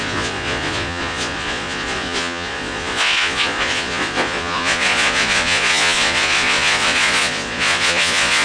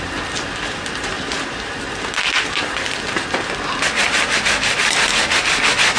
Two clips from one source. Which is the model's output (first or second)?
first